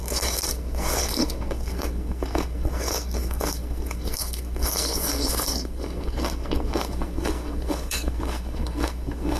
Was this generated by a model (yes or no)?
yes